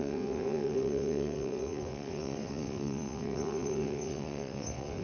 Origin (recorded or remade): remade